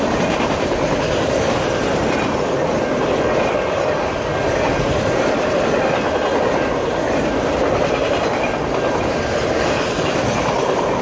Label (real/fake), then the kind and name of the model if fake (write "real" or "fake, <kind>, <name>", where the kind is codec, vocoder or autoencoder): real